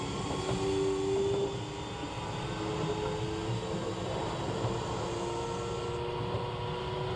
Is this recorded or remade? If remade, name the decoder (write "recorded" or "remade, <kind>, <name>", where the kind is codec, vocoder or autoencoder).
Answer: recorded